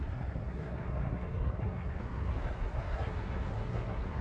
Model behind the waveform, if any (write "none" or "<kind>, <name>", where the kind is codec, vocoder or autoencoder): codec, SNAC